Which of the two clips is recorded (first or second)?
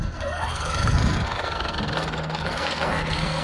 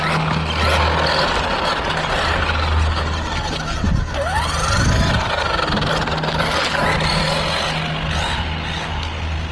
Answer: second